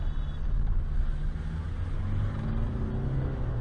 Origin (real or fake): real